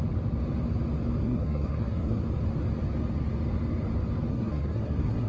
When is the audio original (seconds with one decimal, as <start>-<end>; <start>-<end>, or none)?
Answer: 0.0-1.2; 2.2-4.3